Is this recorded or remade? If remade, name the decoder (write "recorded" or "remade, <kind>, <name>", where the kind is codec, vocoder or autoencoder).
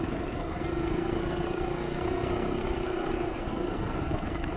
remade, codec, SNAC